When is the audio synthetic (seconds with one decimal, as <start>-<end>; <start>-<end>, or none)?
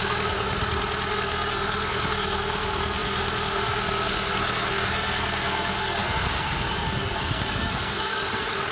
0.0-0.6; 1.1-8.7